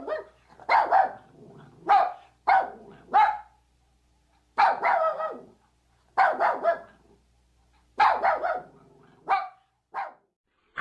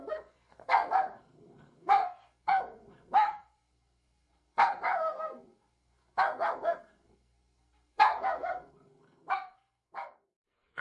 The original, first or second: first